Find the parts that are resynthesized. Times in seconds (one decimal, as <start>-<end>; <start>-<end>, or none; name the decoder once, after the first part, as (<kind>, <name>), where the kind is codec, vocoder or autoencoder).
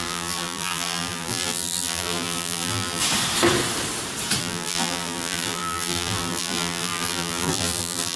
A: 0.0-3.0 (vocoder, BigVGAN v2); 4.4-8.2